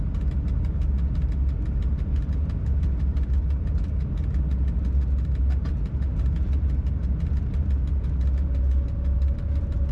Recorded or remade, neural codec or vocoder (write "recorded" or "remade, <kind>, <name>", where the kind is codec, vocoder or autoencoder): recorded